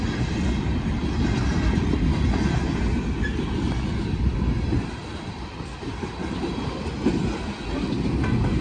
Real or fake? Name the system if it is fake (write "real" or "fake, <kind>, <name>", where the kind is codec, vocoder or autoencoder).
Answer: real